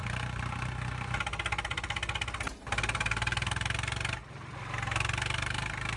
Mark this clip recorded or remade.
recorded